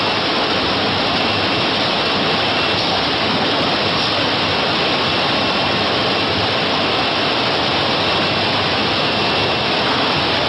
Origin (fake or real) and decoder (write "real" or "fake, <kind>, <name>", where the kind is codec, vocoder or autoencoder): real